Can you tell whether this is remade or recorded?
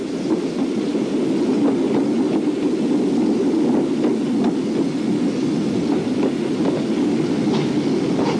recorded